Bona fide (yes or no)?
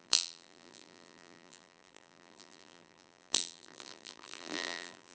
no